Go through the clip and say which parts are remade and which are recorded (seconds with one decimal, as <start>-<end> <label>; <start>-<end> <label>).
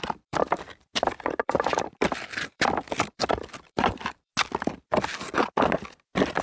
0.0-0.6 remade; 0.6-1.4 recorded; 1.4-4.3 remade; 4.3-6.4 recorded